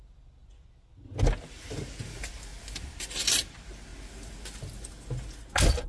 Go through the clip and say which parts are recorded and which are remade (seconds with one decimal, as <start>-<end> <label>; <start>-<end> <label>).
0.0-5.9 recorded